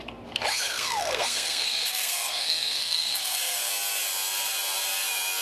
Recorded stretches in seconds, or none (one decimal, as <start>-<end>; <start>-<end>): 0.0-0.5; 3.7-5.4